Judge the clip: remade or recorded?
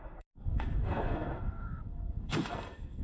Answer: remade